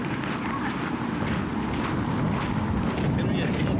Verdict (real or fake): real